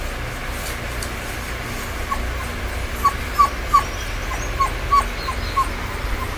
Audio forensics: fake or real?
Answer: real